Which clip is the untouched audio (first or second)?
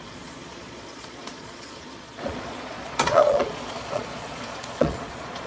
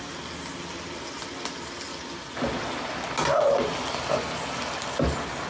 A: second